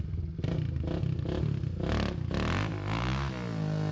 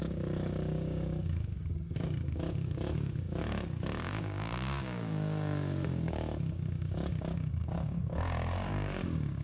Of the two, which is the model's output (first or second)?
second